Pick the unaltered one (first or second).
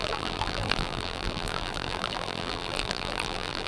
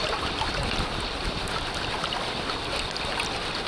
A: second